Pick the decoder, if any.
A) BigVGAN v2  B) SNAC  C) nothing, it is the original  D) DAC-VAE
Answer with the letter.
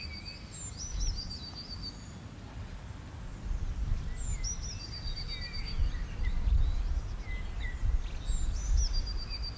C